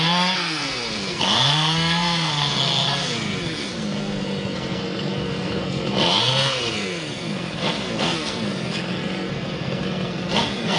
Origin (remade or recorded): remade